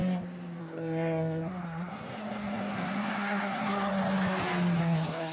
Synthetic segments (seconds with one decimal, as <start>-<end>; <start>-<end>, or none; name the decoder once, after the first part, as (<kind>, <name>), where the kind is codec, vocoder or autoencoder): 0.6-3.9 (codec, SNAC); 4.8-5.3